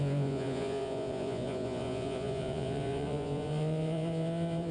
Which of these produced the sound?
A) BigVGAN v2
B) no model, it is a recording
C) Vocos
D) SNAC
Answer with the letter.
C